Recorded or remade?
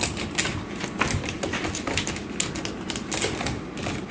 recorded